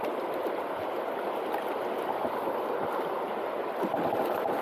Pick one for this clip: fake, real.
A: real